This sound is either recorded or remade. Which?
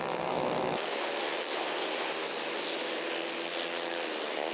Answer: recorded